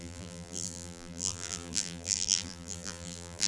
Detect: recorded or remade remade